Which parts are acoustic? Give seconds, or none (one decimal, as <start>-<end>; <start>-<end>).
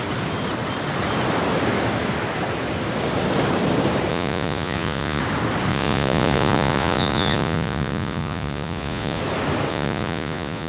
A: 0.0-4.1; 5.2-5.7; 9.2-9.7